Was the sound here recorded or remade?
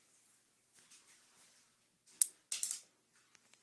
recorded